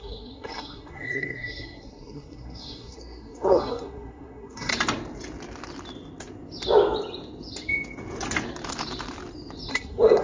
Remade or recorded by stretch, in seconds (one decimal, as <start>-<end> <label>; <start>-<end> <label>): 0.0-4.7 remade; 4.7-9.7 recorded; 9.7-10.2 remade

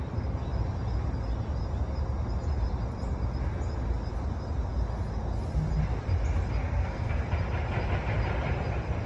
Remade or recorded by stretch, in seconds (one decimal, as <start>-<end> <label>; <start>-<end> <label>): 0.0-6.6 recorded; 6.6-7.2 remade; 7.2-9.1 recorded

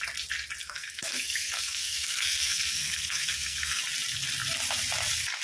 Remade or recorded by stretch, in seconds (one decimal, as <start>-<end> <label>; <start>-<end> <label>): 0.0-0.6 recorded; 0.6-3.8 remade; 3.8-5.4 recorded

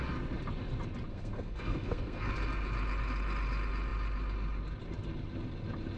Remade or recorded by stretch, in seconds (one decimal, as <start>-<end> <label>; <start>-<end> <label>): 0.0-1.1 recorded; 1.1-2.3 remade; 2.3-6.0 recorded

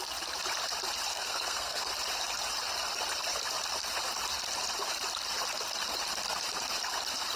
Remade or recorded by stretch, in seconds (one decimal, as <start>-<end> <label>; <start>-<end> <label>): 0.0-1.1 recorded; 1.1-1.9 remade; 1.9-7.4 recorded

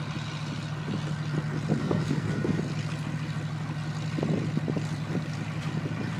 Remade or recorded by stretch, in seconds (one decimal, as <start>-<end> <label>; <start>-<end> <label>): 0.0-1.8 recorded; 1.8-2.6 remade; 2.6-6.2 recorded